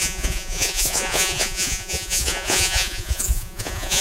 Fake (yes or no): yes